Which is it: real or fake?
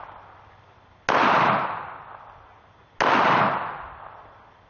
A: real